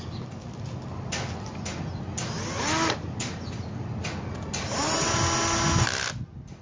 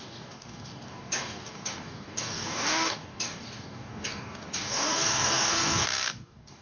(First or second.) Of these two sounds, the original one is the first